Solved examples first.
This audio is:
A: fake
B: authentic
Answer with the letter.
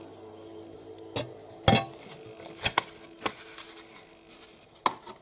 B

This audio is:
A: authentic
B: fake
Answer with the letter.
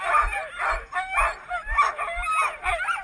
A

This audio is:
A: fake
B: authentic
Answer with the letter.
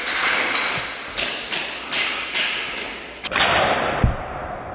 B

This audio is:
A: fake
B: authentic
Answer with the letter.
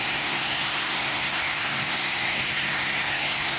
A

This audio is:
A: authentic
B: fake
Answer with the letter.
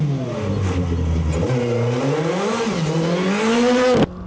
A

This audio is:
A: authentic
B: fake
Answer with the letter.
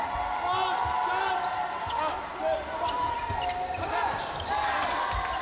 A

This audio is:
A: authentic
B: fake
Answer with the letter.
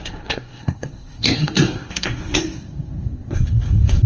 B